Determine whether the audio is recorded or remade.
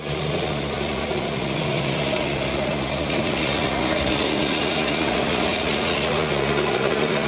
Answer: remade